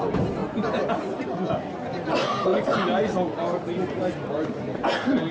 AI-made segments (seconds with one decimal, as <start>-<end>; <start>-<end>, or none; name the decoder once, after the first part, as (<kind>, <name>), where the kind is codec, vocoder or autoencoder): none